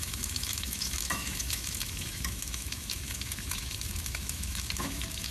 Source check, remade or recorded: remade